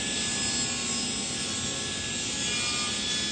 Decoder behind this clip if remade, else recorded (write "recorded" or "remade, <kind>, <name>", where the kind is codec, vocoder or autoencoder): recorded